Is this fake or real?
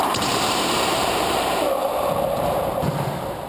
fake